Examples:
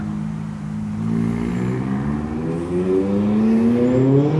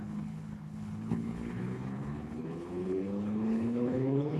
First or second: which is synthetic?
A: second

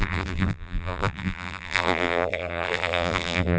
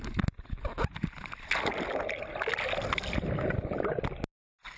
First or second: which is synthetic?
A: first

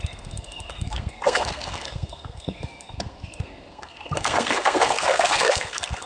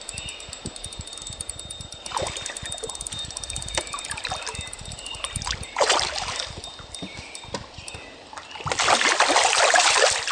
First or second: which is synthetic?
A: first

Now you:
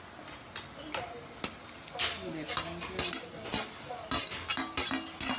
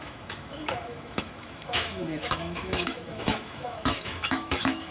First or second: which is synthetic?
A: second